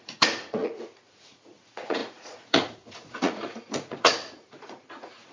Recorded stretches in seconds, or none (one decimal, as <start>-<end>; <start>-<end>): none